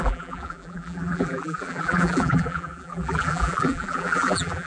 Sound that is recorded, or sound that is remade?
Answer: remade